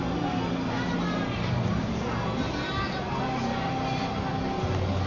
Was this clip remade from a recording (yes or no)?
no